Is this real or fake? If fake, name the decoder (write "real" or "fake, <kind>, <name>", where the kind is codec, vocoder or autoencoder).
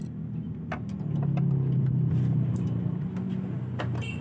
real